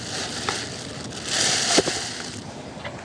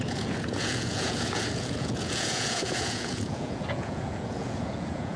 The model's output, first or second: second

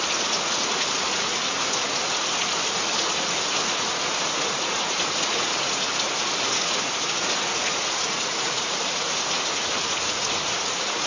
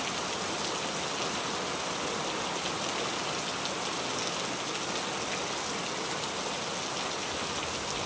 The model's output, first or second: first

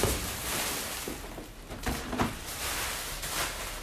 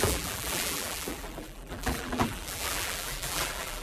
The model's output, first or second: second